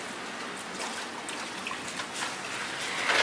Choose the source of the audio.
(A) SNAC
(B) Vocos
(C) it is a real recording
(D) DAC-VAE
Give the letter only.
C